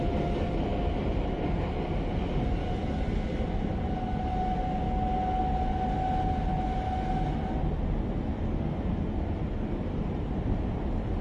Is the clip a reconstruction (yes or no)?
no